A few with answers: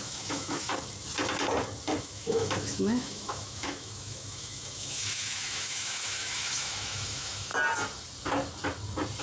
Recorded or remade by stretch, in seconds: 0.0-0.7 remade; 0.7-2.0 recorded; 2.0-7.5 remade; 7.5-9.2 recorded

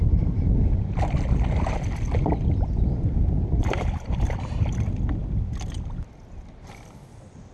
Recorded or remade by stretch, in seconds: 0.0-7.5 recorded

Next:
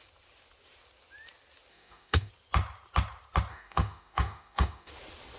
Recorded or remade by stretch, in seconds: 0.0-1.7 recorded; 1.7-2.3 remade; 2.3-3.5 recorded; 3.5-4.9 remade; 4.9-5.4 recorded

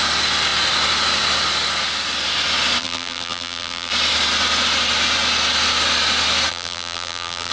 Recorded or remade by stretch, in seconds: 0.0-2.8 recorded; 2.8-3.9 remade; 3.9-6.5 recorded; 6.5-7.5 remade

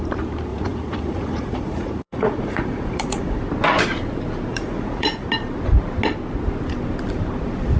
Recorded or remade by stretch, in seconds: 0.0-0.5 recorded; 0.5-3.4 remade; 3.4-4.5 recorded; 4.5-5.3 remade; 5.3-7.8 recorded

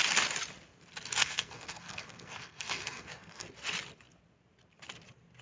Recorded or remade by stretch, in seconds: 0.0-1.2 recorded; 1.2-3.5 remade; 3.5-5.4 recorded